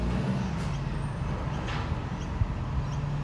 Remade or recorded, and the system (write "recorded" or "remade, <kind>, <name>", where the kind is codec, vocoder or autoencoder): recorded